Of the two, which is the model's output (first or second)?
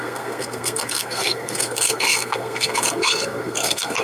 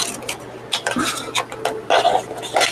first